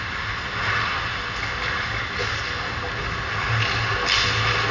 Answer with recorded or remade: recorded